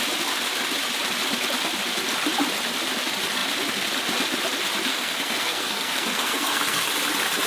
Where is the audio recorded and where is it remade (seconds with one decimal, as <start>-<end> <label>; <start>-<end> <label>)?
0.0-4.9 recorded; 4.9-6.9 remade; 6.9-7.5 recorded